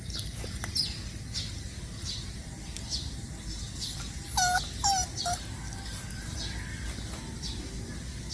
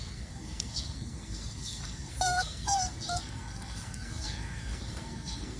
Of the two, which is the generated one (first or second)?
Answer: second